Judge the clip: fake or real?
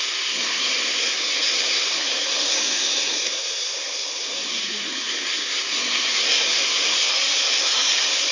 fake